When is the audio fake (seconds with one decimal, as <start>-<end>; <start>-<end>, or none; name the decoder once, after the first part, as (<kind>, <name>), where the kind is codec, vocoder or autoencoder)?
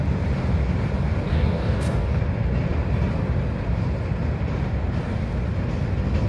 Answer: 1.3-2.2 (codec, DAC)